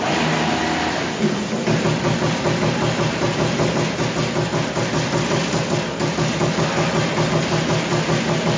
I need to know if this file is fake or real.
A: real